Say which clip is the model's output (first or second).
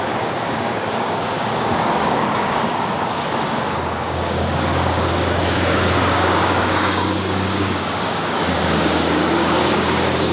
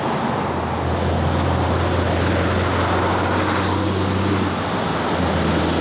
first